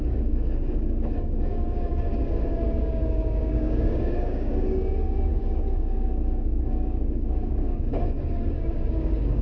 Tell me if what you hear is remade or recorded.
remade